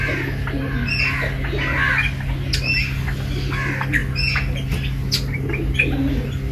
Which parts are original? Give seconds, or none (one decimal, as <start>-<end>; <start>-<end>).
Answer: 0.0-6.5